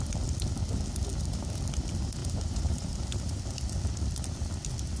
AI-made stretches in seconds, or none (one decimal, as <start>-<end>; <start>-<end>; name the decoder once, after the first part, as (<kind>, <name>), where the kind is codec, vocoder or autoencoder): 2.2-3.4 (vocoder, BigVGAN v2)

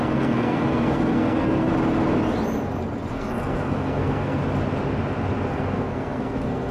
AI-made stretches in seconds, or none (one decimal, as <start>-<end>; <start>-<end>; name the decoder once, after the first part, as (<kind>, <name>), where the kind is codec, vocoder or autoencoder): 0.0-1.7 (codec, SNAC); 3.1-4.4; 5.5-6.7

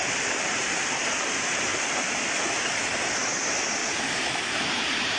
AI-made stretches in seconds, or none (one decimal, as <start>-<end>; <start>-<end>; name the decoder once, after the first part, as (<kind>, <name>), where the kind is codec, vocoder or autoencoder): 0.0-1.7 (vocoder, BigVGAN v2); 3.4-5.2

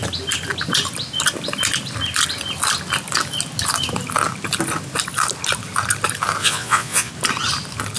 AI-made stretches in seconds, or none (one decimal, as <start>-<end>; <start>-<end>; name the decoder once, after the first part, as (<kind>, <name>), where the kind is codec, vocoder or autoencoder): 6.4-7.1 (vocoder, Vocos)